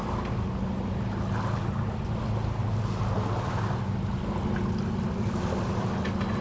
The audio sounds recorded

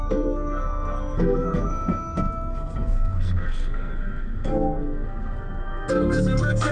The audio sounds remade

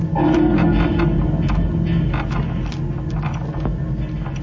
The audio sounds recorded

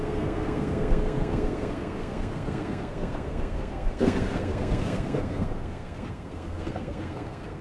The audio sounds remade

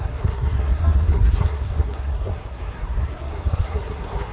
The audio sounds remade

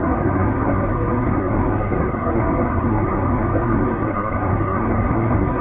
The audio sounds remade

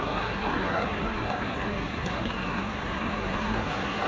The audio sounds remade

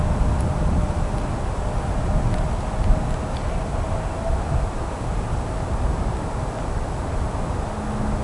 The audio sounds recorded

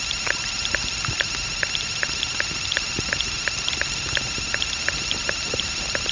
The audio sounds recorded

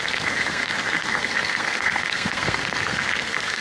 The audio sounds remade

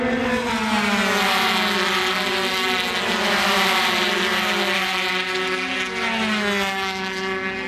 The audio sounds recorded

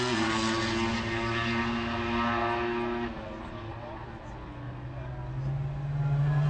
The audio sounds recorded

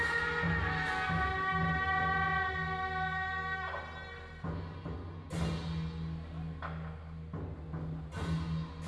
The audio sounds recorded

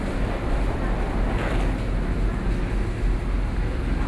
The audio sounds recorded